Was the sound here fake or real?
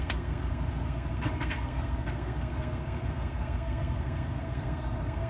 fake